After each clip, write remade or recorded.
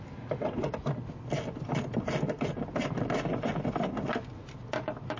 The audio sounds recorded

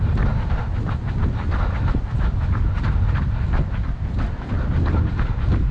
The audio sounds recorded